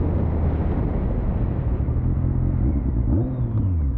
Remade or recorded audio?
recorded